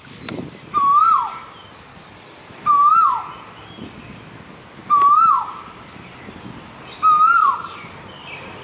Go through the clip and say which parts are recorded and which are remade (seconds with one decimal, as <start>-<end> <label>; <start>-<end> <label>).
0.0-7.4 recorded; 7.4-7.9 remade; 7.9-8.6 recorded